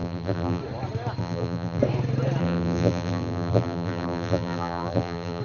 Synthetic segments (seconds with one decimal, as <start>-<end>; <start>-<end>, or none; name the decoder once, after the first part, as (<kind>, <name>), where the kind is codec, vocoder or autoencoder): 0.0-0.6 (vocoder, BigVGAN v2); 1.2-1.8; 2.4-5.4